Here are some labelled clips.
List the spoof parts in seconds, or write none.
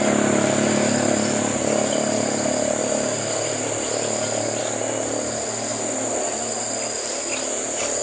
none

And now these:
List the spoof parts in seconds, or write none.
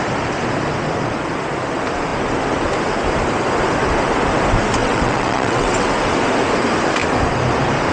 4.8-5.9 (vocoder, WaveNeXt)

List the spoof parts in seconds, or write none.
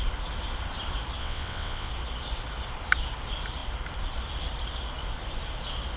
1.2-1.9 (vocoder, WaveNeXt)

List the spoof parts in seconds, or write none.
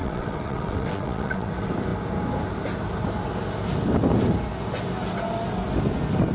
0.0-1.5 (vocoder, WaveNeXt)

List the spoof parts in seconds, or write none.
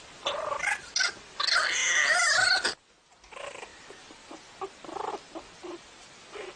none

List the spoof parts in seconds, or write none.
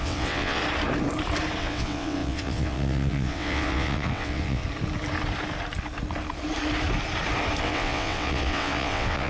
0.0-0.6 (vocoder, WaveNeXt); 1.6-4.6; 7.6-9.3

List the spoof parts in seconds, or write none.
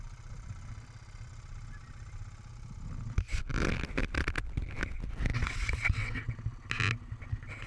5.3-6.2 (vocoder, WaveNeXt)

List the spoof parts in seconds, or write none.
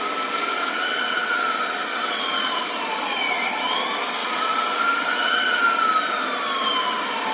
0.5-1.4 (vocoder, WaveNeXt); 1.9-2.6; 4.2-5.6